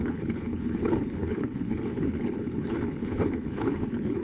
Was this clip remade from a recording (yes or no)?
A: yes